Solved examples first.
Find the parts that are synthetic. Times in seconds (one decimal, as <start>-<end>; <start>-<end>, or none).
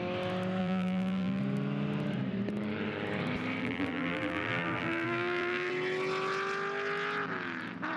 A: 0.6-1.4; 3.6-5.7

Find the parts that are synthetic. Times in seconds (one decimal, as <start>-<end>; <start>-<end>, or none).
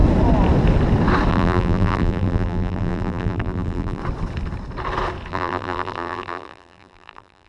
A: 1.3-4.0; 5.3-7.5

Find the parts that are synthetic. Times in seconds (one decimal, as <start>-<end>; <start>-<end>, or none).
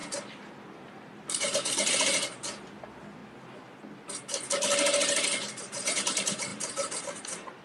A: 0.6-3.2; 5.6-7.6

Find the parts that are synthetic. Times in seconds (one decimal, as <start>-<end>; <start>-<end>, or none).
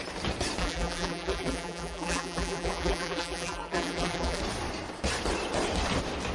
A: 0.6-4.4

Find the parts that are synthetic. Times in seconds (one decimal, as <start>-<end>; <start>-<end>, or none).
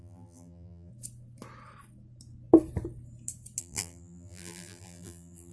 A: 0.0-0.9; 3.6-5.5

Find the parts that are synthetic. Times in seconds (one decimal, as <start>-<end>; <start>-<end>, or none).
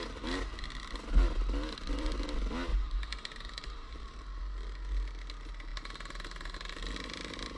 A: 2.7-4.4